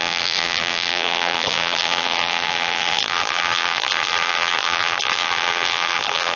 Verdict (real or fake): fake